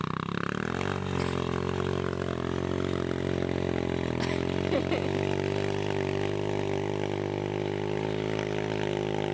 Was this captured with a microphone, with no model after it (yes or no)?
yes